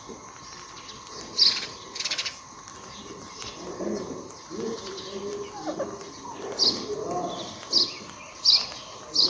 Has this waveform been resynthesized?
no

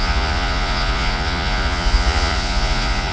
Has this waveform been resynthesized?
yes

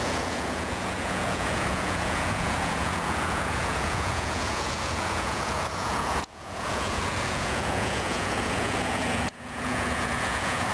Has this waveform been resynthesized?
yes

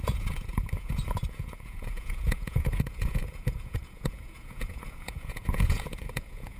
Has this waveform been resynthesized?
yes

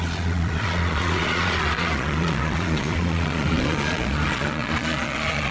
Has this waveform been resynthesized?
yes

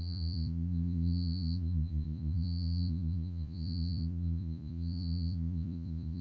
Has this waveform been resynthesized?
yes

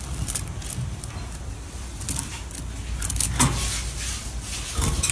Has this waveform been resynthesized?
no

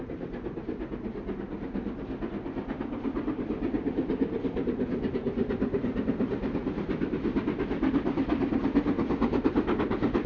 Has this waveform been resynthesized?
no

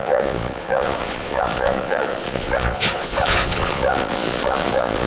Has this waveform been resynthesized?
yes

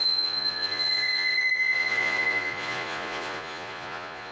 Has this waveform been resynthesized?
yes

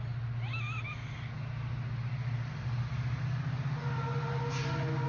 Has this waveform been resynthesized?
no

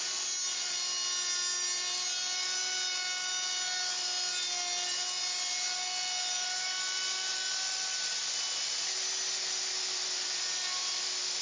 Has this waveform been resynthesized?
no